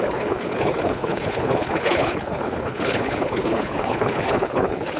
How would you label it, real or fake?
fake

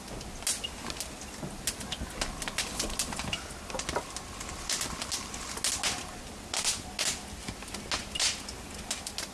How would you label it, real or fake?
real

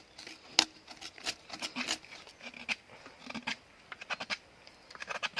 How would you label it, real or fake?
real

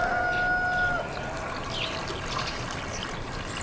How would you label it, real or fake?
real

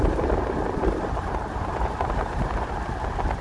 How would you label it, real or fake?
real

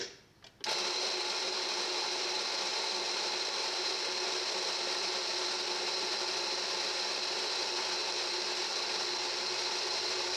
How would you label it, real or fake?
real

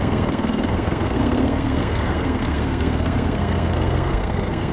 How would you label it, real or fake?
fake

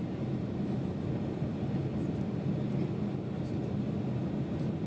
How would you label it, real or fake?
real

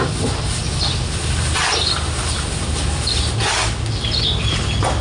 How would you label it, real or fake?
real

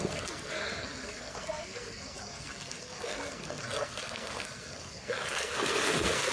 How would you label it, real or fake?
fake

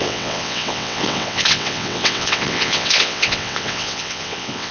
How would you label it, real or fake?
fake